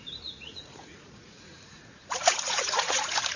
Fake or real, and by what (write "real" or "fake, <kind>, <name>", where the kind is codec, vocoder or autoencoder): fake, vocoder, Vocos